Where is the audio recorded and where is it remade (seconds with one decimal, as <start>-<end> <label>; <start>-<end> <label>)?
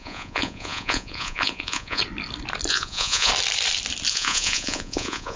0.0-2.0 remade; 2.0-2.7 recorded; 2.7-3.3 remade; 3.3-4.1 recorded; 4.1-5.4 remade